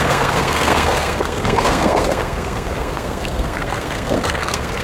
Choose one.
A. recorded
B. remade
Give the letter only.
B